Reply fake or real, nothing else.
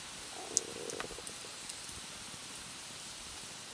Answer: real